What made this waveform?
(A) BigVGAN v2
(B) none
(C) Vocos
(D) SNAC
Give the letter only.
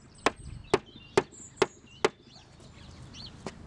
B